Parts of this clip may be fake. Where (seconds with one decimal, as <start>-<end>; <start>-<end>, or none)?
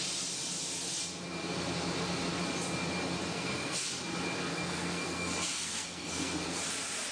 3.3-3.9; 4.5-6.6